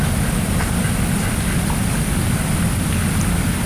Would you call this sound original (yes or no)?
yes